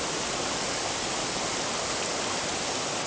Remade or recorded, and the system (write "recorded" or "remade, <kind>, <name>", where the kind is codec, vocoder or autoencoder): recorded